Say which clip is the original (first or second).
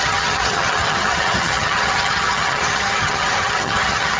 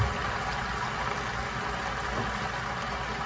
second